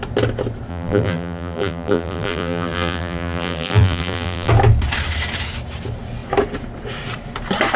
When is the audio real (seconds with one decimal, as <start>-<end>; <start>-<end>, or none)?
0.0-0.7; 4.5-7.8

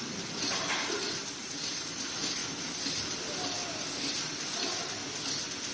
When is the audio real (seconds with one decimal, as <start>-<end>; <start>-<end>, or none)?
2.4-3.7; 5.0-5.7